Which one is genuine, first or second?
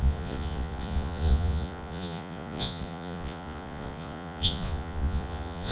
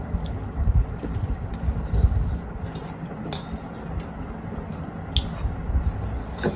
second